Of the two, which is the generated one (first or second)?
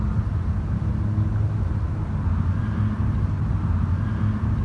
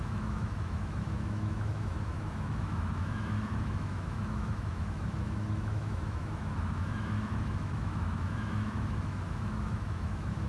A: second